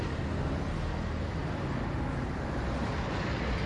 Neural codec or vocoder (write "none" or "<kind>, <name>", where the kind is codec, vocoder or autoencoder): none